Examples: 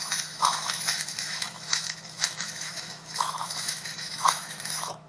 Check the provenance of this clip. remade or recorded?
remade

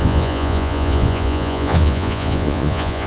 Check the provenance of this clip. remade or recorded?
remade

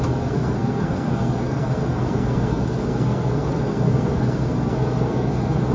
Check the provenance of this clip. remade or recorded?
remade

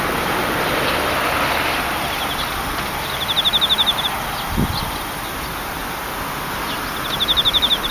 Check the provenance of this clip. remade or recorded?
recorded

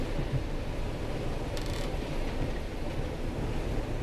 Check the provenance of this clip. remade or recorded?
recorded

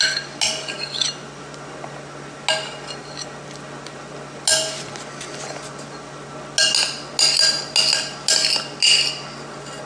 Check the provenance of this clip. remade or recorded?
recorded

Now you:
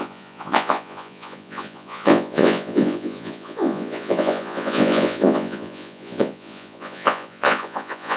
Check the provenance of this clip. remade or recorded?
remade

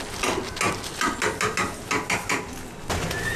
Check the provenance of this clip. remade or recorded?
recorded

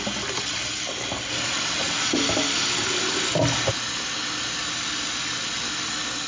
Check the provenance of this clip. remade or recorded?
recorded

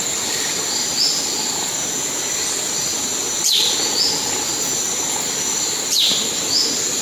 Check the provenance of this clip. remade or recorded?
recorded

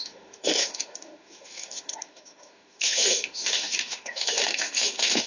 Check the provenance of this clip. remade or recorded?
remade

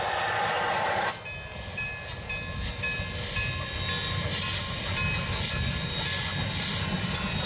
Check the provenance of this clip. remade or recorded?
recorded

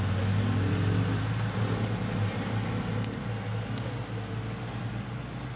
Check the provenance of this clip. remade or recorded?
recorded